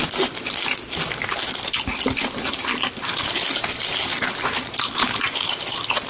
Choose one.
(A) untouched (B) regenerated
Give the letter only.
A